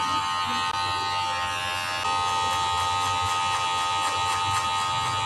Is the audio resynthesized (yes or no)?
no